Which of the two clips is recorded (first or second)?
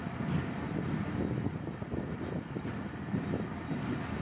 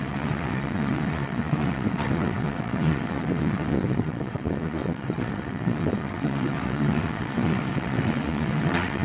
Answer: first